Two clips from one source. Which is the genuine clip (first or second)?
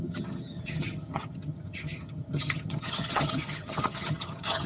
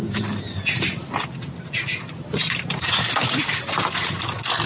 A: second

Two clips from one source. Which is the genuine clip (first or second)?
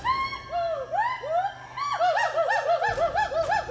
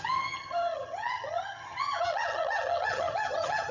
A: first